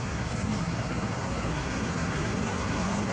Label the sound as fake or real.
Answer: fake